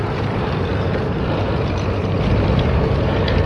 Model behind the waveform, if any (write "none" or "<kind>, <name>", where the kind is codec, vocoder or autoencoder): vocoder, BigVGAN v2